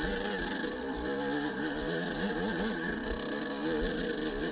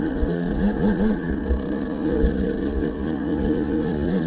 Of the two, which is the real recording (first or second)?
first